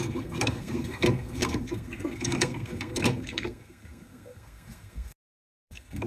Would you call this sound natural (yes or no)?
no